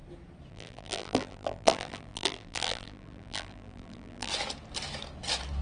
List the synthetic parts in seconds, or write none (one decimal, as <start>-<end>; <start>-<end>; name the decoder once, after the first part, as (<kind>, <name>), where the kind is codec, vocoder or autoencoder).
0.5-4.3 (vocoder, BigVGAN v2)

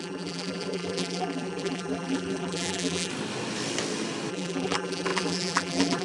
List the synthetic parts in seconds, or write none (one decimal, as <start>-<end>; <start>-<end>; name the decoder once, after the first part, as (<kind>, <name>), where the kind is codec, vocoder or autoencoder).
0.0-3.1 (vocoder, BigVGAN v2); 4.3-6.0

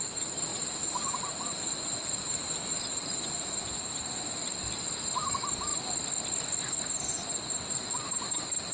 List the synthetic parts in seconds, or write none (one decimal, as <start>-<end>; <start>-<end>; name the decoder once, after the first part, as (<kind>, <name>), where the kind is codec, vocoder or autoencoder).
0.5-3.5 (vocoder, BigVGAN v2)

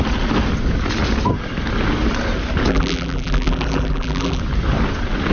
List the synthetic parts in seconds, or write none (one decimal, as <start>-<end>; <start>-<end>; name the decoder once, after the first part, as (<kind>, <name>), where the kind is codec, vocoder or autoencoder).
2.7-4.4 (vocoder, BigVGAN v2)

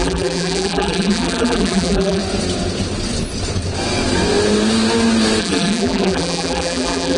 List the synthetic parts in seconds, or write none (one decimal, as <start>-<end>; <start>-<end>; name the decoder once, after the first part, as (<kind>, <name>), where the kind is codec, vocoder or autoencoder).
0.0-2.2 (vocoder, BigVGAN v2); 5.4-7.2

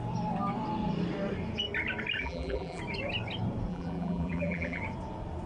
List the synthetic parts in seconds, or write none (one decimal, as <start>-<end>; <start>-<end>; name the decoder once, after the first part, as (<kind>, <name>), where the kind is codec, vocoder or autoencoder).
2.2-2.8 (vocoder, BigVGAN v2); 3.7-4.8

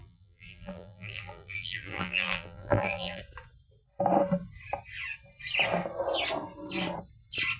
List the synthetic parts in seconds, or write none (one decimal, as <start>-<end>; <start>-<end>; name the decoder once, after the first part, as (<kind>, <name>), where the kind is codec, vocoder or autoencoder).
0.0-3.2 (vocoder, BigVGAN v2)

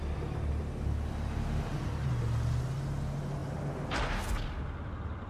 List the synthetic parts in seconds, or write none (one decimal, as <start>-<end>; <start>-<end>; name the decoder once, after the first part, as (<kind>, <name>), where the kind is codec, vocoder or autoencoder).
0.0-0.5 (vocoder, BigVGAN v2)